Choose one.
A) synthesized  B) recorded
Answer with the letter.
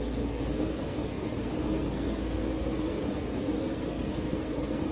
A